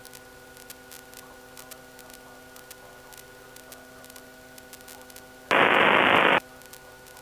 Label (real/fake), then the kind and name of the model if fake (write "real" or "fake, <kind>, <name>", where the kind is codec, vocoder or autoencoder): real